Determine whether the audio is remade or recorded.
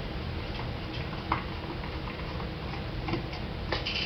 recorded